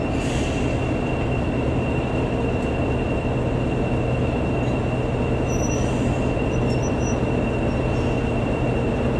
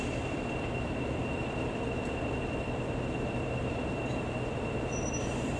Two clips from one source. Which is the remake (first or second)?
second